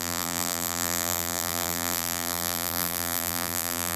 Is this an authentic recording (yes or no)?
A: no